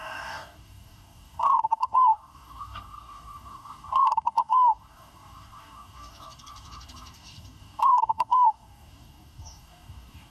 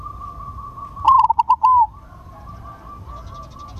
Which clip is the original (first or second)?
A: second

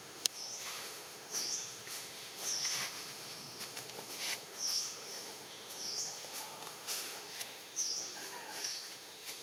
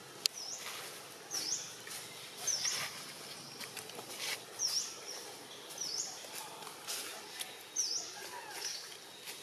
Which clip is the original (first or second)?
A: second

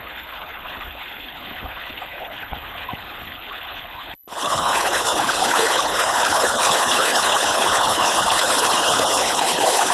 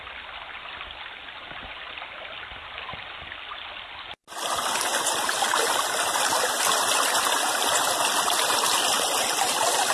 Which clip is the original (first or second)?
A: second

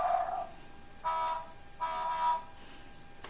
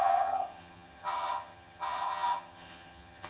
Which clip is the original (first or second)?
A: first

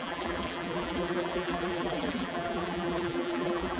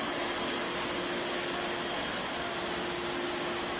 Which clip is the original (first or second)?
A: second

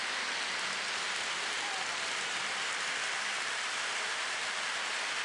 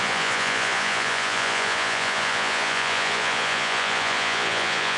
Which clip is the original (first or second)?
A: first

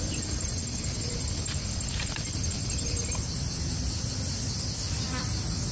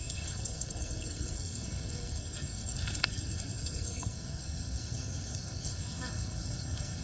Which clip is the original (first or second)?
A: first